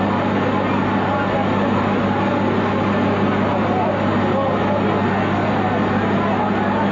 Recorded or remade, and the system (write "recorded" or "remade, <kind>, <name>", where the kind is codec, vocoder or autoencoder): recorded